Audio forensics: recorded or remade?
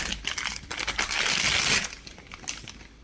recorded